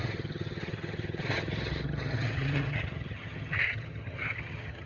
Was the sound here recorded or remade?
remade